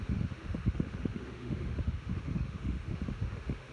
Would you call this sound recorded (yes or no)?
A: no